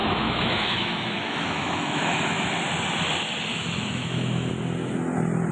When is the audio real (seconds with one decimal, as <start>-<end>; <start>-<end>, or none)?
2.5-3.5; 4.5-5.5